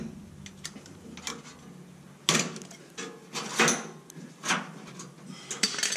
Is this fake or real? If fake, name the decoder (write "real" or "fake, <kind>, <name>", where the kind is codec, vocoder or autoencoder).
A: real